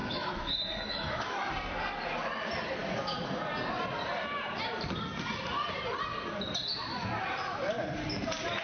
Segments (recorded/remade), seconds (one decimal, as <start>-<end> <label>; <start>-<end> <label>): 0.0-1.5 remade; 1.5-8.6 recorded